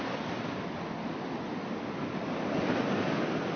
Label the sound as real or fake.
real